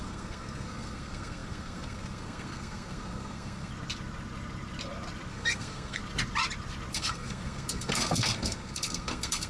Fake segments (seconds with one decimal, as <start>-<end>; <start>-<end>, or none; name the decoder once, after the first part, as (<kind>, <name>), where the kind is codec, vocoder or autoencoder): 0.0-3.7 (codec, SNAC); 5.3-6.0; 6.9-9.5